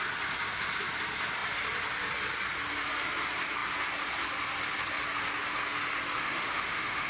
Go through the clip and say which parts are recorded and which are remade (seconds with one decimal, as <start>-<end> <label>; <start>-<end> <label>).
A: 0.0-6.2 recorded; 6.2-7.1 remade